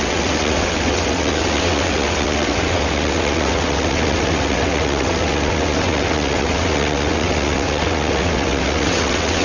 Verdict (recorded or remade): remade